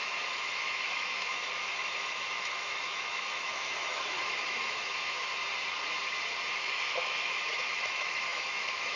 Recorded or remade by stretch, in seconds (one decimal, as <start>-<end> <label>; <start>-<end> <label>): 0.0-5.3 remade; 5.3-6.5 recorded; 6.5-9.0 remade